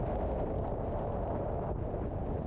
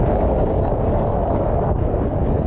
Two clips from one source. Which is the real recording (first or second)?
first